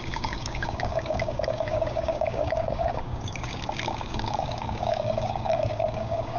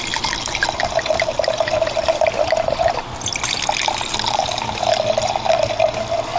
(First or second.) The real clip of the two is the second